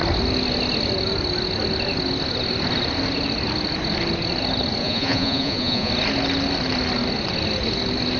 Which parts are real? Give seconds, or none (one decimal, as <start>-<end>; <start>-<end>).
0.0-4.8; 5.9-8.2